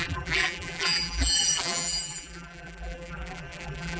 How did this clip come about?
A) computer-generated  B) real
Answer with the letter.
A